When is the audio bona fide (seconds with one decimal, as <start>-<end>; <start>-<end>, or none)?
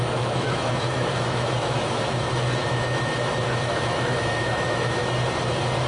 5.0-5.9